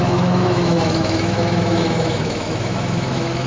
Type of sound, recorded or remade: remade